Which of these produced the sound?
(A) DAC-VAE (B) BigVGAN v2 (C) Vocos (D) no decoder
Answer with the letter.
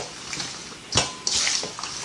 D